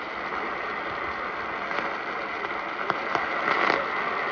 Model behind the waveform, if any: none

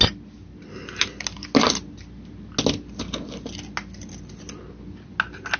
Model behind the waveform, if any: none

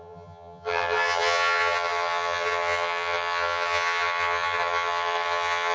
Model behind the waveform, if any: vocoder, HiFi-GAN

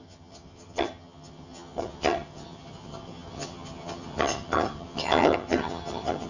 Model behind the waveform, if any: vocoder, HiFi-GAN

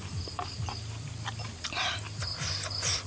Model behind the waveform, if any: none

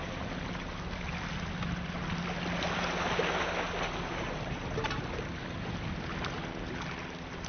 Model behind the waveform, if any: none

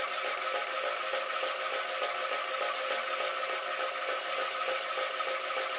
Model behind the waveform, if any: none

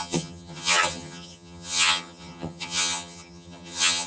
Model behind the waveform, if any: vocoder, HiFi-GAN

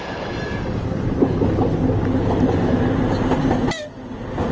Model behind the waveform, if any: none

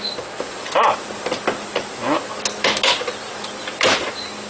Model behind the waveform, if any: none